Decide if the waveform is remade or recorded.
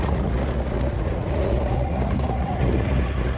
remade